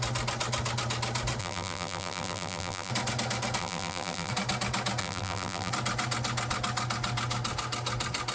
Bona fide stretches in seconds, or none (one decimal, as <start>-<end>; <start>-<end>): 0.0-1.4; 2.9-3.6; 4.3-5.0; 5.7-8.3